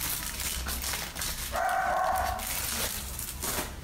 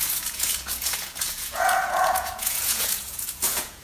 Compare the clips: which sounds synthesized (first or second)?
second